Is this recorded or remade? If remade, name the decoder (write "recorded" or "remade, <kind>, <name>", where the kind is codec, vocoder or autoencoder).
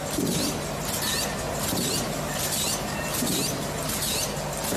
recorded